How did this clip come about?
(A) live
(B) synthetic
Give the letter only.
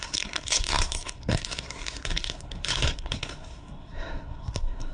B